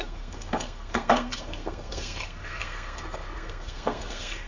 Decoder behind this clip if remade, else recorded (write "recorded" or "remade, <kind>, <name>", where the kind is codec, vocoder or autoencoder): remade, codec, SNAC